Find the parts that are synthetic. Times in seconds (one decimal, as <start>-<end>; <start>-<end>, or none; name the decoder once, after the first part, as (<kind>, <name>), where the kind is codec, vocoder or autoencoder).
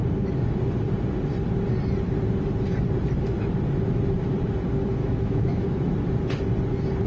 5.0-5.9 (autoencoder, DAC-VAE)